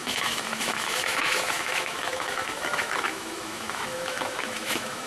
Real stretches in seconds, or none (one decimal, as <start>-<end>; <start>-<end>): none